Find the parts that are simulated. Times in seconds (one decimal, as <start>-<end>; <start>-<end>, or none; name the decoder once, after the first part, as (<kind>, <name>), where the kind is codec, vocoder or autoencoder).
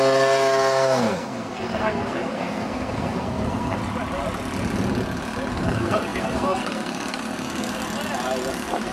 0.0-3.8 (codec, SNAC); 5.5-7.8; 8.5-8.9